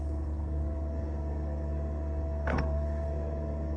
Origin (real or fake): fake